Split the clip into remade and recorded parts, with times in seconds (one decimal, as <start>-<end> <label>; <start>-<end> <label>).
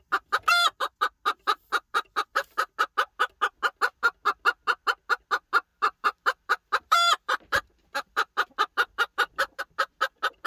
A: 0.0-5.7 recorded; 5.7-9.6 remade; 9.6-10.5 recorded